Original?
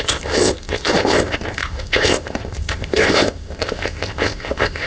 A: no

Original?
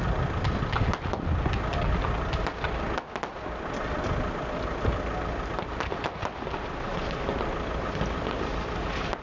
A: yes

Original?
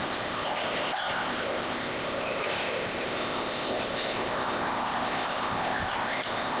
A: no